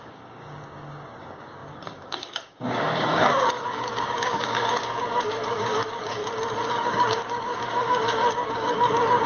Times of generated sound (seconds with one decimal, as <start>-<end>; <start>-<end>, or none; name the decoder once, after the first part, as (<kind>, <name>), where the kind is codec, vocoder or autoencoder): 0.0-6.2 (codec, DAC); 6.7-9.3